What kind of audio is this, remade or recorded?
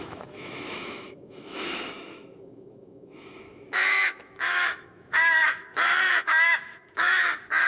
remade